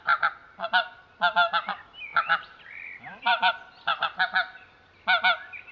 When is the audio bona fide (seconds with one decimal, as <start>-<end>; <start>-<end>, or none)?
0.0-2.1; 3.5-5.7